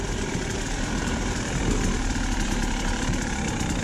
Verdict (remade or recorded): remade